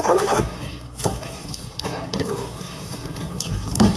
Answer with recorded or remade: remade